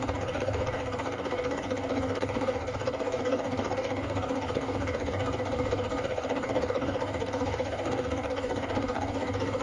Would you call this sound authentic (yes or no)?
no